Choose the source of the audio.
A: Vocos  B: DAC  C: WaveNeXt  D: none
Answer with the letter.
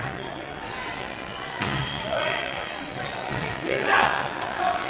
C